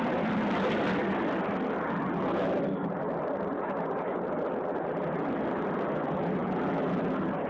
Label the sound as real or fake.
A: real